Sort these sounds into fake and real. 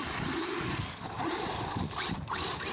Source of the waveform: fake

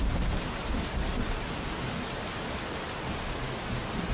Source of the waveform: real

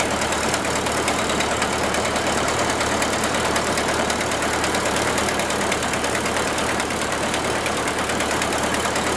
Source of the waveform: fake